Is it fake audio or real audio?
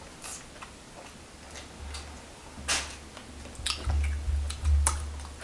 real